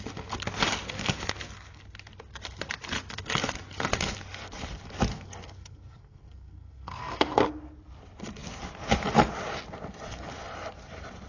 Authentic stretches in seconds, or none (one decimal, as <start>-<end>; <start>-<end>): 0.0-5.1; 7.4-11.3